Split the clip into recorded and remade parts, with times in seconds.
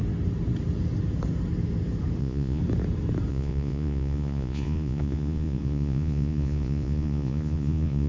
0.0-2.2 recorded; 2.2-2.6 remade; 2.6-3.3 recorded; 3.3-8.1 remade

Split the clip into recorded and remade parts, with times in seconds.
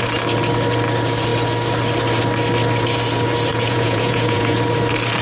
0.0-3.5 recorded; 3.5-4.6 remade; 4.6-5.2 recorded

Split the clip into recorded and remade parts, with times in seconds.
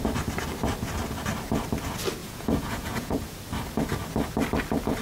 0.0-2.2 recorded; 2.2-3.2 remade; 3.2-5.0 recorded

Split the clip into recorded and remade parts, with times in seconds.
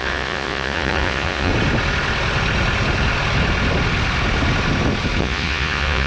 0.0-1.5 remade; 1.5-5.2 recorded; 5.2-6.1 remade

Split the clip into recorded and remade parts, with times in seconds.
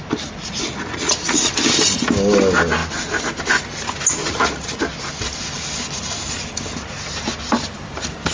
0.0-0.4 recorded; 0.4-1.5 remade; 1.5-4.2 recorded; 4.2-4.8 remade; 4.8-8.3 recorded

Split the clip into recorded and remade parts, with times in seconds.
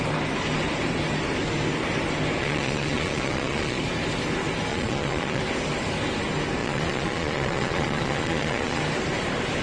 0.0-2.4 recorded; 2.4-3.8 remade; 3.8-4.7 recorded; 4.7-5.4 remade; 5.4-6.6 recorded; 6.6-8.8 remade; 8.8-9.6 recorded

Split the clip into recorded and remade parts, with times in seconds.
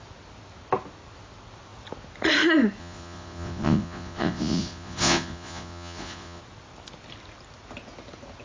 0.0-2.8 recorded; 2.8-6.4 remade; 6.4-8.4 recorded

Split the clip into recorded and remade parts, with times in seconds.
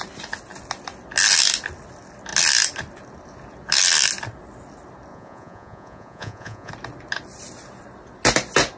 0.0-5.1 recorded; 5.1-6.7 remade; 6.7-8.8 recorded